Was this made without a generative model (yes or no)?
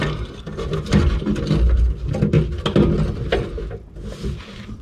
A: yes